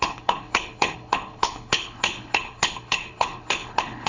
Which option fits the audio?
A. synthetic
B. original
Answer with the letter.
A